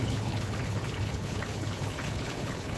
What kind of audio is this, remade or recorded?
remade